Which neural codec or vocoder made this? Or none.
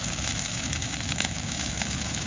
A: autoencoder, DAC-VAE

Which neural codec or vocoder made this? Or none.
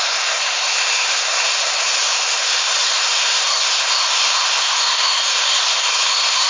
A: codec, SNAC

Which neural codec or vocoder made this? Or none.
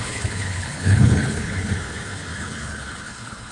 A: codec, HILCodec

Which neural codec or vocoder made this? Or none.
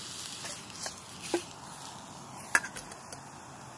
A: none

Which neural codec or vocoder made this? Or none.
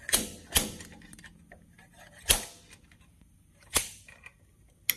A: none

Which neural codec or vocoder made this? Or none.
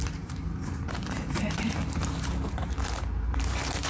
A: vocoder, BigVGAN v2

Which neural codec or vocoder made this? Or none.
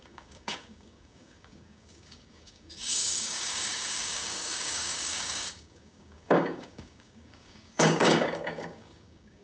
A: codec, DAC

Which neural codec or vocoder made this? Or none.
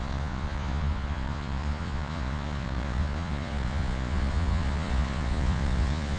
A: vocoder, Vocos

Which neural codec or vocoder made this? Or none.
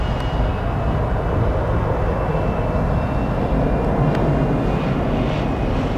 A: none